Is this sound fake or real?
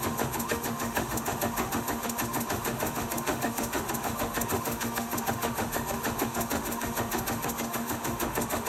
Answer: fake